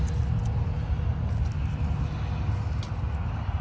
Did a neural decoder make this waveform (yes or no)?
no